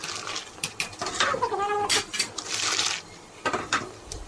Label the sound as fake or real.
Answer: real